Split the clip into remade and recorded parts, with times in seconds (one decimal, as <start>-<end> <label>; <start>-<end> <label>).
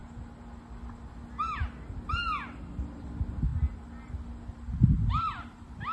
0.0-5.9 recorded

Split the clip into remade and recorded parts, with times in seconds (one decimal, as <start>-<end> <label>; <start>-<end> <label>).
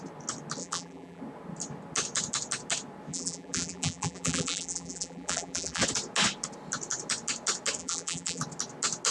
0.0-0.6 recorded; 0.6-1.2 remade; 1.2-3.1 recorded; 3.1-5.8 remade; 5.8-7.8 recorded; 7.8-8.4 remade; 8.4-9.1 recorded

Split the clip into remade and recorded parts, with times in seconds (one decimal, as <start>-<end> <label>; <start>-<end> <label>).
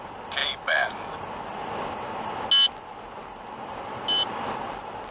0.0-5.1 recorded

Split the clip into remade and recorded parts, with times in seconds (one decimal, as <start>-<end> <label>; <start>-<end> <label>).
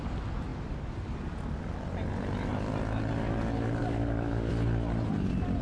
0.0-3.8 recorded; 3.8-4.5 remade; 4.5-5.6 recorded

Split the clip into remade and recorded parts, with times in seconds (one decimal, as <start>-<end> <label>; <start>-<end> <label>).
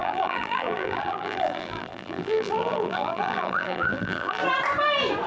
0.0-4.4 remade; 4.4-5.3 recorded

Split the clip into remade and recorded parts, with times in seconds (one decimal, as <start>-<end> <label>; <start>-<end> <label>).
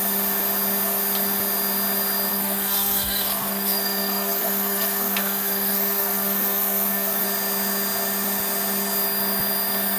0.0-2.3 recorded; 2.3-7.2 remade; 7.2-10.0 recorded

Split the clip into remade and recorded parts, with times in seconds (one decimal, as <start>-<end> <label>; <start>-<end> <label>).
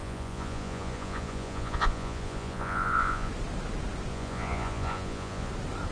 0.0-3.3 remade; 3.3-4.1 recorded; 4.1-5.5 remade; 5.5-5.9 recorded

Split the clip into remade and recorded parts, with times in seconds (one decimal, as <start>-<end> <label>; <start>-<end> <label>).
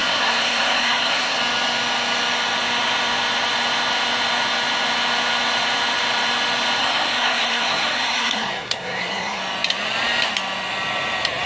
0.0-1.4 remade; 1.4-6.8 recorded; 6.8-9.4 remade; 9.4-11.5 recorded